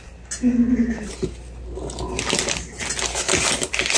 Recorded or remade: recorded